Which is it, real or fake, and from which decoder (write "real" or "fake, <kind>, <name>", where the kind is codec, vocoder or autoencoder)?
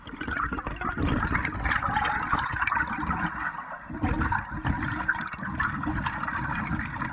real